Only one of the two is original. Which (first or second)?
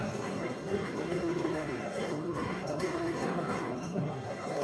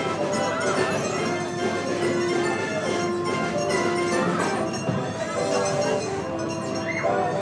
second